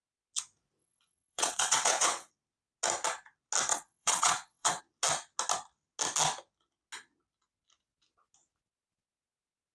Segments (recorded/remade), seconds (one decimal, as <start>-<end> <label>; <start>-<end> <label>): 0.0-0.8 recorded; 0.8-2.3 remade; 2.3-3.7 recorded; 3.7-4.8 remade; 4.8-9.7 recorded